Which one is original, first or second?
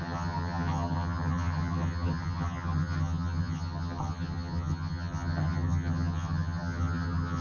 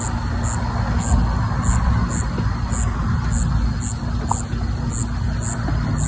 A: second